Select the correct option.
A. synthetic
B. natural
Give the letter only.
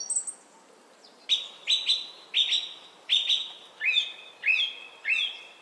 B